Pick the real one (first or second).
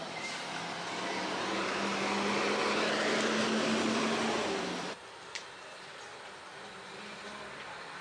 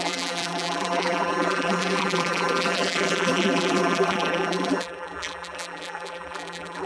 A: first